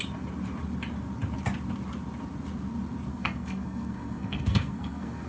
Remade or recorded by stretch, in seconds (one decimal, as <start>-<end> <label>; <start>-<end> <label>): 0.0-3.1 recorded; 3.1-5.3 remade